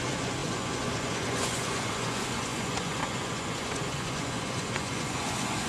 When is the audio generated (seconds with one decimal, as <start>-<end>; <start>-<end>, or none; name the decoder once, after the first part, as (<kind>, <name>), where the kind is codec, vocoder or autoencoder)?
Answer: 0.0-5.7 (vocoder, Vocos)